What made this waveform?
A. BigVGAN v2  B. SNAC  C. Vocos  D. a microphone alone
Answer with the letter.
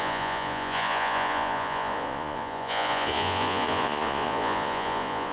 C